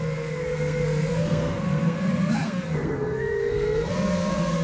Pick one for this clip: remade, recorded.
remade